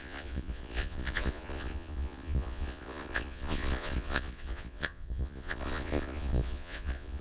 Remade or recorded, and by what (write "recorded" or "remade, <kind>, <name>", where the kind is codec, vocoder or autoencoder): remade, vocoder, Vocos